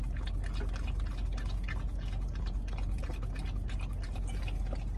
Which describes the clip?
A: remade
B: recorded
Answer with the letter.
B